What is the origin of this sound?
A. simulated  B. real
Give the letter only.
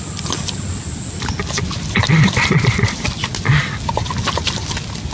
B